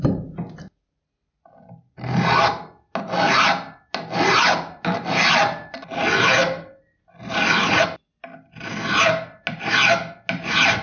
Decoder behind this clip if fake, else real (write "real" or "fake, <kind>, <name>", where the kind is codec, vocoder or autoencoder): real